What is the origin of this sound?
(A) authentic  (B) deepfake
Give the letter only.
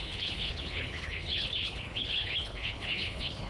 B